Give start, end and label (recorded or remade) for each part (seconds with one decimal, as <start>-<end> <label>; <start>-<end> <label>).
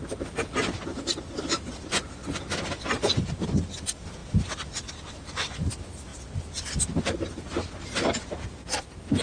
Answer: 0.0-9.2 recorded